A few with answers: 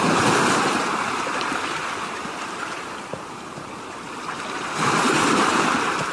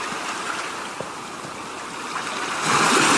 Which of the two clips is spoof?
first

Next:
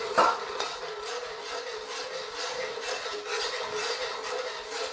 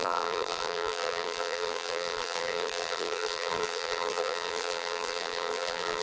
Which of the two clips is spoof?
second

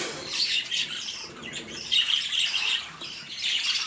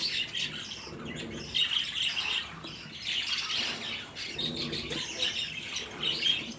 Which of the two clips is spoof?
first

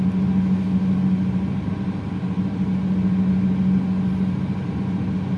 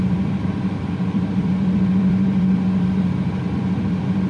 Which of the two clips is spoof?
second